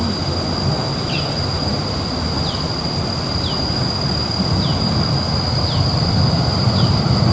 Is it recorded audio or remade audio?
recorded